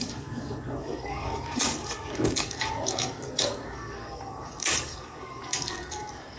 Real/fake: fake